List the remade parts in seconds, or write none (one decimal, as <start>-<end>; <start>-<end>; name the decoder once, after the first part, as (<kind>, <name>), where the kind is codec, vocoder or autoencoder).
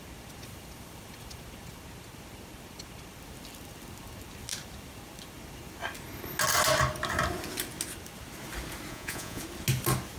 8.9-9.4 (vocoder, Vocos)